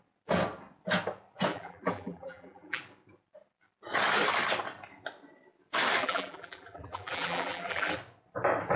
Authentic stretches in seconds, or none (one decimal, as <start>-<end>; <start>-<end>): 0.0-1.5; 2.8-6.0; 8.0-8.8